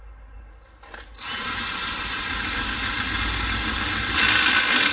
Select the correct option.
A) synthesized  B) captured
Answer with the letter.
B